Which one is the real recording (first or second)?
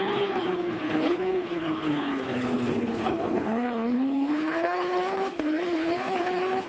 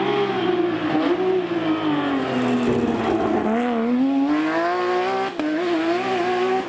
second